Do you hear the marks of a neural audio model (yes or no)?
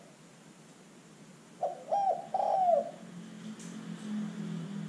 no